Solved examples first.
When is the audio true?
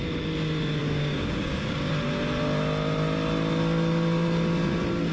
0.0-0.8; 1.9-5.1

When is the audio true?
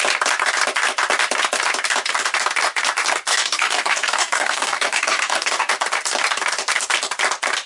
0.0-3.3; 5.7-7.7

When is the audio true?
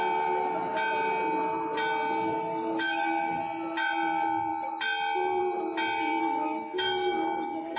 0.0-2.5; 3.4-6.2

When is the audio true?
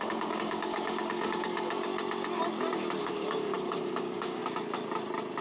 1.9-3.0; 4.4-5.4